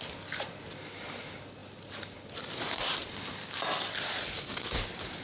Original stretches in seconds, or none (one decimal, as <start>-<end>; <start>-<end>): 0.0-5.2